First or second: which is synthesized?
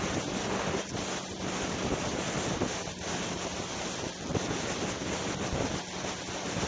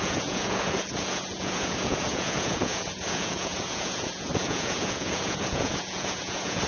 second